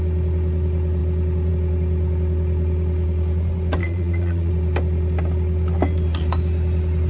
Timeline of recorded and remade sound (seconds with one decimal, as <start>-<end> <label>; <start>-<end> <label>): 0.0-3.8 recorded; 3.8-4.5 remade; 4.5-7.1 recorded